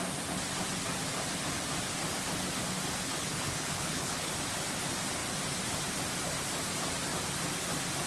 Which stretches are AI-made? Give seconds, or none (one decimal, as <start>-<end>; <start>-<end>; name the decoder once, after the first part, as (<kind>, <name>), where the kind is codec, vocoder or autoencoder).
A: 3.2-4.3 (codec, HILCodec)